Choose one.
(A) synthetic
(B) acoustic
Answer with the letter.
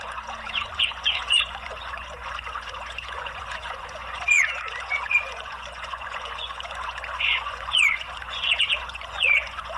A